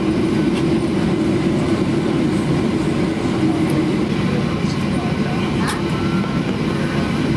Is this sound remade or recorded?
recorded